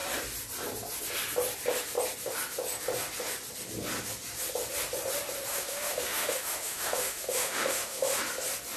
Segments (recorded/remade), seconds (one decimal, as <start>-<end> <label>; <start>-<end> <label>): 0.0-5.5 recorded; 5.5-8.2 remade; 8.2-8.8 recorded